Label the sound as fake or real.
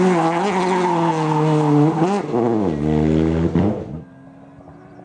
real